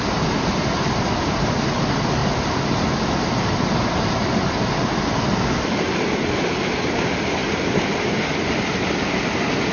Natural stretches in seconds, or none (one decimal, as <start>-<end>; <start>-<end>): 0.0-9.7